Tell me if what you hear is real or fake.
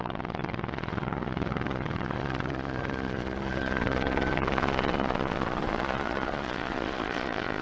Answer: fake